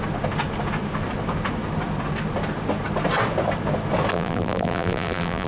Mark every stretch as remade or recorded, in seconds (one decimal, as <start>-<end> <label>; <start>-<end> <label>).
0.0-4.1 recorded; 4.1-5.5 remade